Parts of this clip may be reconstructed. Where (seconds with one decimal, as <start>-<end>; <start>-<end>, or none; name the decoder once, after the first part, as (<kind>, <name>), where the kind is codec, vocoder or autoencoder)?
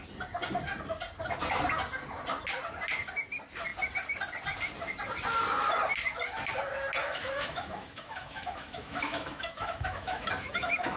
7.0-11.0 (autoencoder, DAC-VAE)